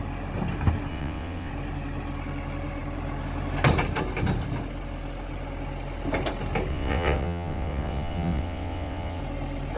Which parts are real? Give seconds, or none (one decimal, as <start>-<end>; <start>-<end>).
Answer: 0.0-0.9; 1.5-6.7; 9.2-9.8